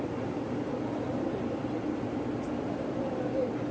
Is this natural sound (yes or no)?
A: no